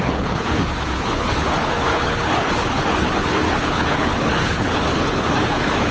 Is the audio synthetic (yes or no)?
yes